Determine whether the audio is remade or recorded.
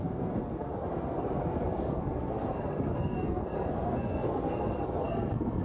remade